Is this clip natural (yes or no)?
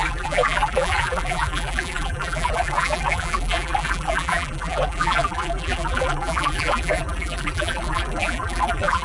no